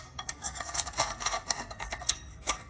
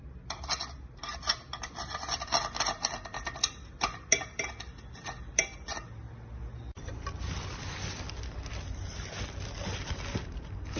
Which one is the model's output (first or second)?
first